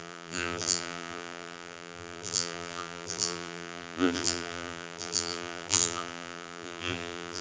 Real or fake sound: fake